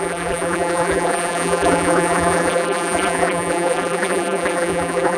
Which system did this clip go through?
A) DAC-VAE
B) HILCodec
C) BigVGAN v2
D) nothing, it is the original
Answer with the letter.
C